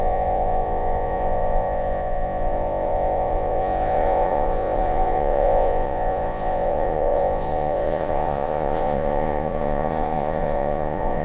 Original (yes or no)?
no